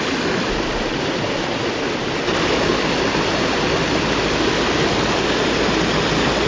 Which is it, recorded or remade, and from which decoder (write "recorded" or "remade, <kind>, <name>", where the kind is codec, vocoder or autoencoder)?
recorded